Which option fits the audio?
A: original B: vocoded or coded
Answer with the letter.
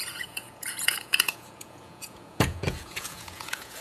B